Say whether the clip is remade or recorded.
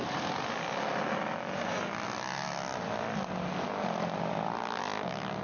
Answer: recorded